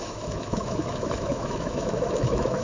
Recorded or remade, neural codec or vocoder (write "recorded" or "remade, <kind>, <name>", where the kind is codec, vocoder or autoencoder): remade, autoencoder, DAC-VAE